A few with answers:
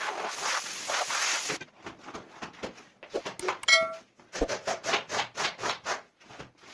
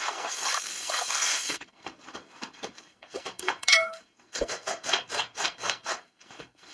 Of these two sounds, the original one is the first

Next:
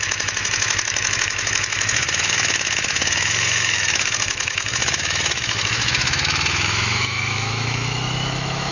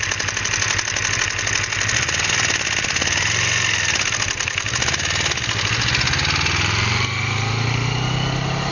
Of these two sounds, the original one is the second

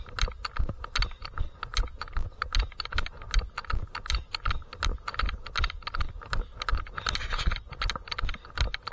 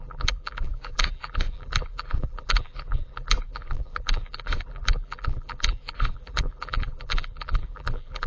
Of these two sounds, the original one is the first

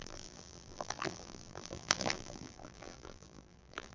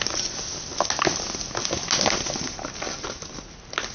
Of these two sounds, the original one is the second